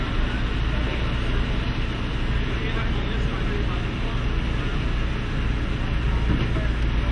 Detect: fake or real real